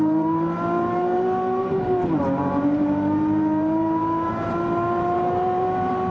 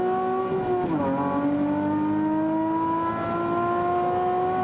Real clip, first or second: second